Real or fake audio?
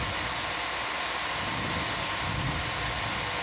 real